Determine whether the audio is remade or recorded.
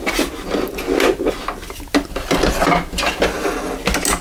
recorded